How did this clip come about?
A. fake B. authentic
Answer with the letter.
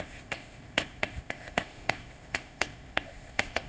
A